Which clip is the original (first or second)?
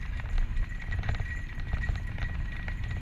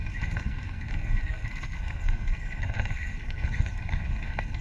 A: first